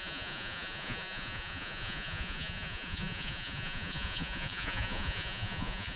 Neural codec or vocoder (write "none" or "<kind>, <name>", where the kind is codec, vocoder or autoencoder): vocoder, Vocos